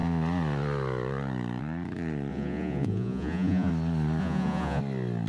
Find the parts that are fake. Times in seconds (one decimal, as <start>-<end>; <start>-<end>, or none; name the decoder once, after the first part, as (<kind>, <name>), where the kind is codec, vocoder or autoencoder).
2.3-3.7 (vocoder, Vocos); 4.2-4.8